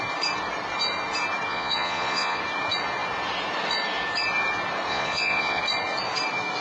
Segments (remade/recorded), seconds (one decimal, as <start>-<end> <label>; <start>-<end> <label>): 0.0-1.5 recorded; 1.5-2.4 remade; 2.4-4.9 recorded; 4.9-5.6 remade; 5.6-6.6 recorded